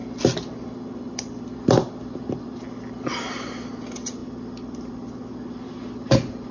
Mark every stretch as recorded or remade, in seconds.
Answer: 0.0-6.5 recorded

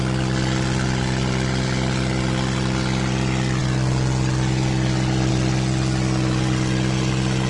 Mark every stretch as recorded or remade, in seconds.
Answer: 0.0-7.5 recorded